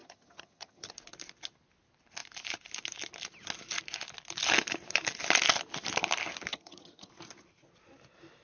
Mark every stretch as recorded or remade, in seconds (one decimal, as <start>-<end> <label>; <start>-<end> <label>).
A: 0.0-0.9 remade; 0.9-6.5 recorded; 6.5-7.1 remade; 7.1-8.4 recorded